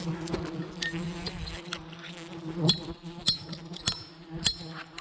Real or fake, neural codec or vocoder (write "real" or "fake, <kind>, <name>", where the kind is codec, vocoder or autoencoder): real